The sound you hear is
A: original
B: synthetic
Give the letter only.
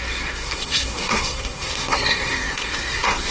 B